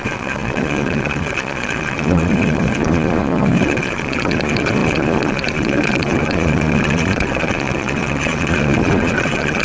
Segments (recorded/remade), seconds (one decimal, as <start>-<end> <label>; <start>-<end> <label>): 0.0-9.6 remade